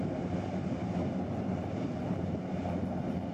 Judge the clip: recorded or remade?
remade